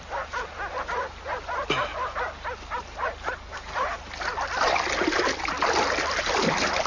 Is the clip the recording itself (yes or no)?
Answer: yes